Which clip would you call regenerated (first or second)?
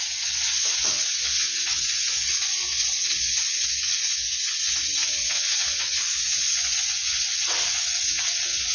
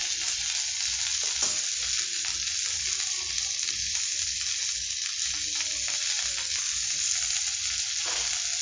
first